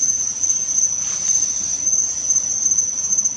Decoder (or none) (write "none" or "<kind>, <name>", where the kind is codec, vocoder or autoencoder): none